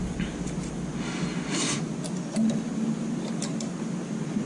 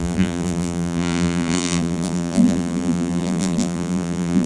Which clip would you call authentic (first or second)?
first